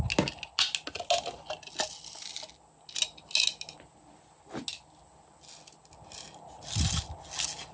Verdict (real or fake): real